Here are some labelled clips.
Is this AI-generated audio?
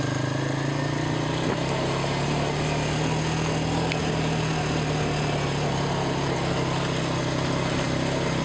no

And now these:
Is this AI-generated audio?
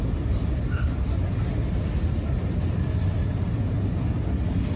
no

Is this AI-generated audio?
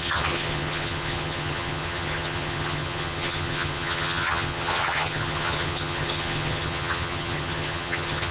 yes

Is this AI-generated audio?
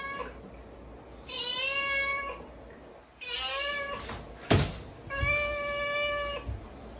no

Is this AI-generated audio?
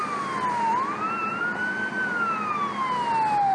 no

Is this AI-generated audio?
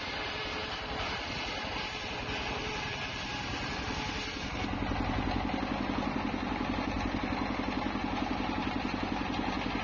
no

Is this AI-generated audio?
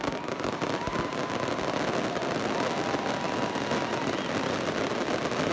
no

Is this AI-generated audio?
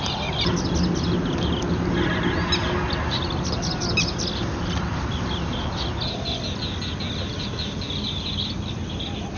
no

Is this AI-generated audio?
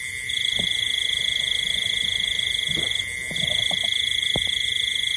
no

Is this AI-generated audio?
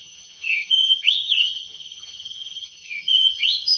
yes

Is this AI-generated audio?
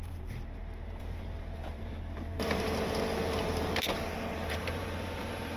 yes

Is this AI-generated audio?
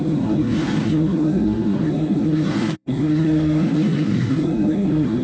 yes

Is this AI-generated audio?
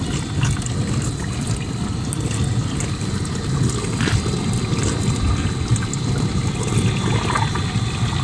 no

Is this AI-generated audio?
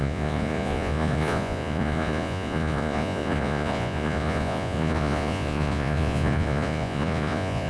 yes